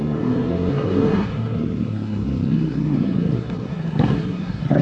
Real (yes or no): no